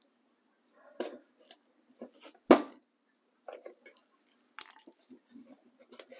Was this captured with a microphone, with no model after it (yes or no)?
yes